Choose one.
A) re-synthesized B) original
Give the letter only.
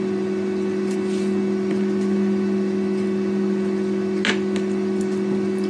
B